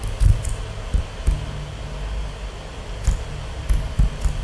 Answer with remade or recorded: recorded